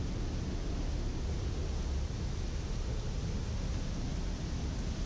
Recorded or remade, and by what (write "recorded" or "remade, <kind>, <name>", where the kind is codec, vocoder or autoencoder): recorded